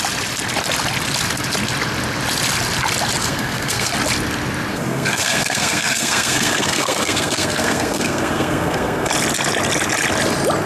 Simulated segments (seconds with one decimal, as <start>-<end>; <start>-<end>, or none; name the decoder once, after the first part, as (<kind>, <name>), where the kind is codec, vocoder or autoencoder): 3.2-3.9 (codec, SNAC); 4.7-9.1